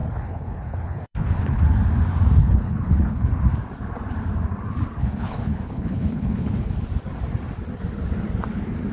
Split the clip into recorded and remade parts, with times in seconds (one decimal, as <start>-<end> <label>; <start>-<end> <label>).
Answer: 0.0-1.6 remade; 1.6-2.4 recorded; 2.4-3.3 remade; 3.3-5.0 recorded; 5.0-6.7 remade; 6.7-8.9 recorded